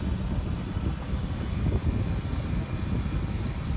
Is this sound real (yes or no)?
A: yes